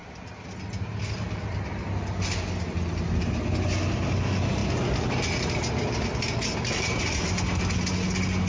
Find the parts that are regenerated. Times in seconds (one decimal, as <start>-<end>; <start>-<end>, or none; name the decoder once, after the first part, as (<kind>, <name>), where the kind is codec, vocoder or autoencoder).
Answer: none